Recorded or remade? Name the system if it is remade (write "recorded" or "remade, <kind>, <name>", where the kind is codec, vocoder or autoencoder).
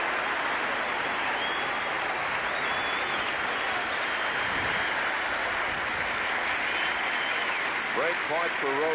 recorded